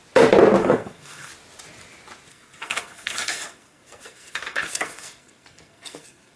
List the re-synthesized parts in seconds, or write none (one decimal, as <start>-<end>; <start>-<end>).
0.6-1.3; 2.3-6.4